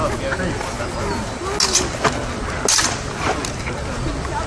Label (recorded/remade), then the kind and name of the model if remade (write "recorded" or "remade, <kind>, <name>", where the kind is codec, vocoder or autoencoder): recorded